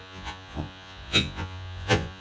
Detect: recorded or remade remade